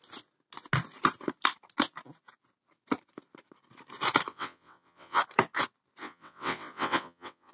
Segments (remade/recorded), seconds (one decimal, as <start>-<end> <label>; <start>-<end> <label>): 0.0-4.3 recorded; 4.3-5.2 remade; 5.2-6.0 recorded; 6.0-7.5 remade